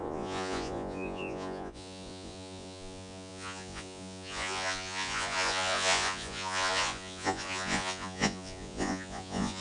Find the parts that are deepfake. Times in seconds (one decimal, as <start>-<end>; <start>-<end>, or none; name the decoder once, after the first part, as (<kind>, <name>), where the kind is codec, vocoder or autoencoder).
0.0-9.6 (vocoder, Vocos)